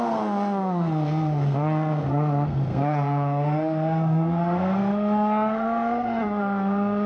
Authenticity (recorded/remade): remade